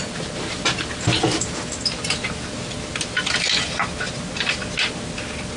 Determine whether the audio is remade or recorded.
recorded